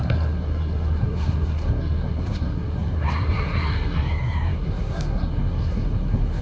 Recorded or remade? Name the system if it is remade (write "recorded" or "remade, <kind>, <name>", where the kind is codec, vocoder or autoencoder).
remade, codec, SNAC